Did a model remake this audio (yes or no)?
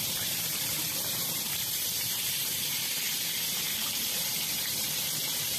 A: yes